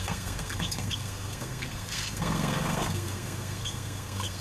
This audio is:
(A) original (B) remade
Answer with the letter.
B